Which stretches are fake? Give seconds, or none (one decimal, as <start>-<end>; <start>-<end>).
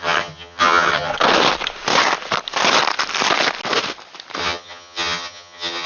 0.0-1.1; 4.4-5.9